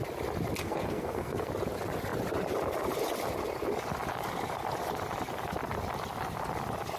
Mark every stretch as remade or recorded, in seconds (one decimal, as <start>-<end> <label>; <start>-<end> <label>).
0.0-0.6 recorded; 0.6-1.5 remade; 1.5-7.0 recorded